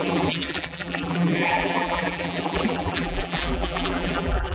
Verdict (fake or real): fake